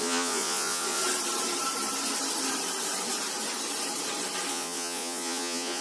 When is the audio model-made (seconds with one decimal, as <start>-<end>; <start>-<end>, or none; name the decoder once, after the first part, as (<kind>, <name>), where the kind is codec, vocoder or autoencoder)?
0.0-1.0 (vocoder, Vocos); 4.5-5.8